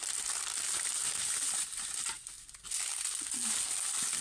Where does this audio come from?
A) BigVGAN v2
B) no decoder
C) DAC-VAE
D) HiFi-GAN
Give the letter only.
B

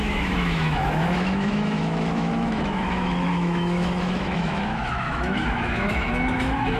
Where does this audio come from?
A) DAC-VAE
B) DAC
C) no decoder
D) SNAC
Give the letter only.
A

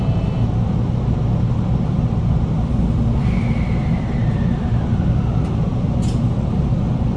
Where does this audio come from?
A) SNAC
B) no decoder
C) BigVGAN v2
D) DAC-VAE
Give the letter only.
B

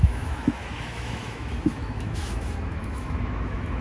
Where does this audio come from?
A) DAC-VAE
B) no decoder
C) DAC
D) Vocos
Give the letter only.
A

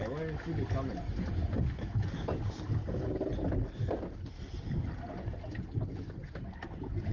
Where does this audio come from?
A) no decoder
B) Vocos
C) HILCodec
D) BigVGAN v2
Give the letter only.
A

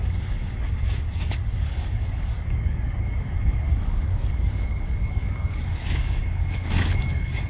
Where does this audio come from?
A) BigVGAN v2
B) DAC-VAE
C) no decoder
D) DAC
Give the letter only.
D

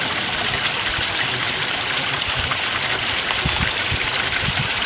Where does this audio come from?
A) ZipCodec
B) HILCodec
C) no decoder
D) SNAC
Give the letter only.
C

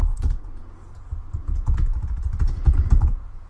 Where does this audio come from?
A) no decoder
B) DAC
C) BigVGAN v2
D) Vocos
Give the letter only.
D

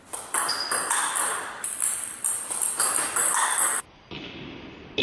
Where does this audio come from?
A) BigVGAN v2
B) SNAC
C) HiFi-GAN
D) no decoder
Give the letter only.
D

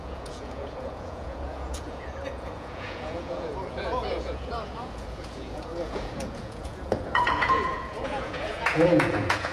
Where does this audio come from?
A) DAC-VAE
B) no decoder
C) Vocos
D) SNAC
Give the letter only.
C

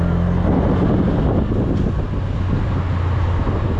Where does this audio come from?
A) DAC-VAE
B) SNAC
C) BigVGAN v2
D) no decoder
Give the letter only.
D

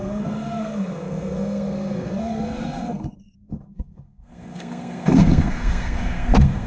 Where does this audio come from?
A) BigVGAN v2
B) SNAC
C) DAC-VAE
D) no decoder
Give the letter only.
B